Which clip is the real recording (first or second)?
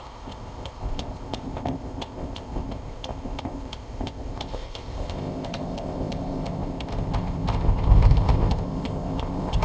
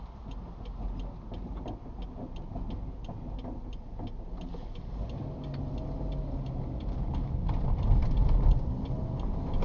second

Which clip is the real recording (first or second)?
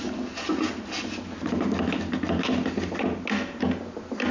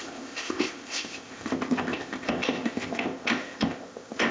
first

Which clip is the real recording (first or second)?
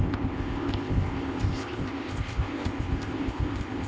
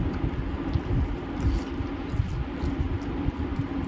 second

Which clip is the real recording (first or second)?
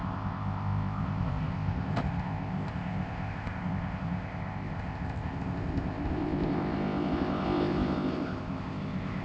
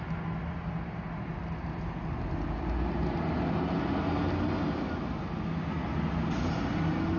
second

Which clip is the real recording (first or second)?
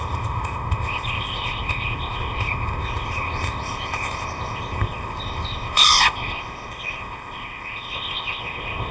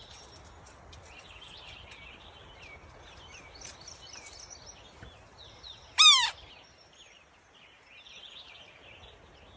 second